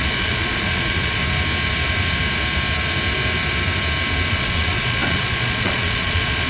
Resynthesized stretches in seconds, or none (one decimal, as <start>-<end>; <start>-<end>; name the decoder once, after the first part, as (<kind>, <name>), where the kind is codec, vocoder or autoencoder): 0.0-1.2 (vocoder, Vocos); 4.3-6.5